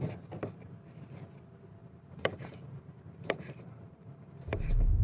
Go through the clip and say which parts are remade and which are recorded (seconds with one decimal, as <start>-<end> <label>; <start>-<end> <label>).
0.0-1.8 recorded; 1.8-5.0 remade